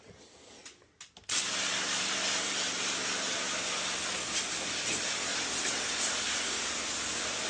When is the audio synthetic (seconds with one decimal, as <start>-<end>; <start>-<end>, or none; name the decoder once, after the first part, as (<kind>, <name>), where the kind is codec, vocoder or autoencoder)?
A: none